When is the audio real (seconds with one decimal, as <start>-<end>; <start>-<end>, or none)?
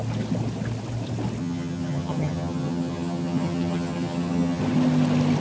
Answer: 0.0-1.4; 4.6-5.4